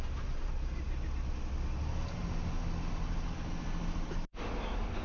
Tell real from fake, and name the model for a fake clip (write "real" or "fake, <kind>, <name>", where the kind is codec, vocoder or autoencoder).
real